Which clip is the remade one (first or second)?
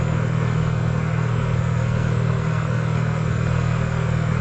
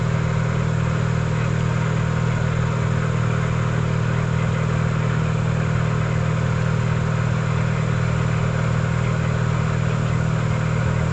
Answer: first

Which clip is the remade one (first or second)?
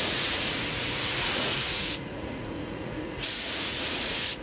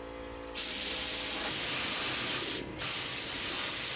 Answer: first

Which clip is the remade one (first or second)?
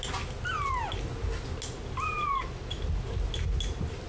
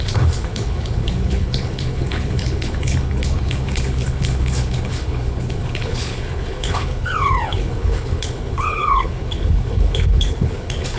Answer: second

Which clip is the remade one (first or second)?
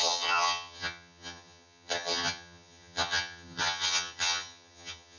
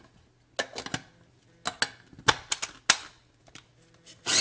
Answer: first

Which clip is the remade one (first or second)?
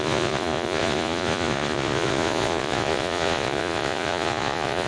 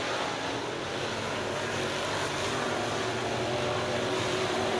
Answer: first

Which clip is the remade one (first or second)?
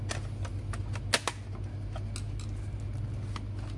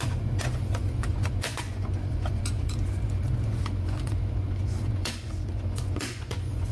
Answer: second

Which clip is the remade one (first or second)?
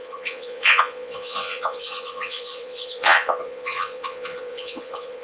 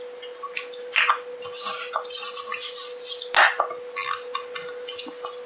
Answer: first